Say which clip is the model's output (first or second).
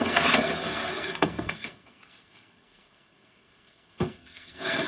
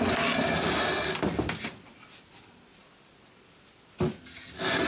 first